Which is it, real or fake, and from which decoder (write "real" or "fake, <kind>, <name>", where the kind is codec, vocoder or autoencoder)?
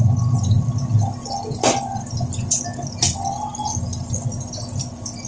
real